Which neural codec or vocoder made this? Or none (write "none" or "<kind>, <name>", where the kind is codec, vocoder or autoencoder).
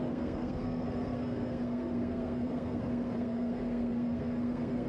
codec, SNAC